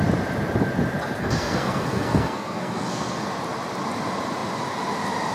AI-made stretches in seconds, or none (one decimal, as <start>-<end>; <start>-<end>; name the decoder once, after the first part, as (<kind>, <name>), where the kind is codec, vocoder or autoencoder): 1.2-3.3 (codec, SNAC)